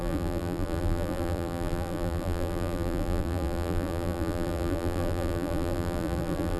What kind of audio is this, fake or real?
fake